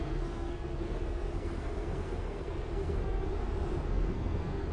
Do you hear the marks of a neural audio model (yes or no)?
yes